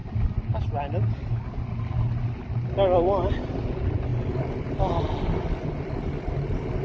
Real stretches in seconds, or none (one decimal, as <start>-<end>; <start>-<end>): 0.8-6.8

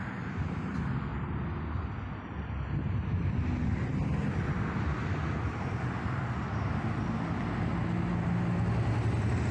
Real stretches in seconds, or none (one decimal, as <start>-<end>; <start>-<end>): 0.0-9.5

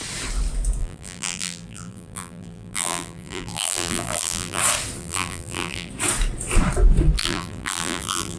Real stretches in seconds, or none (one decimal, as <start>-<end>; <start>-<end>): 0.0-0.8; 4.6-5.0; 5.9-7.2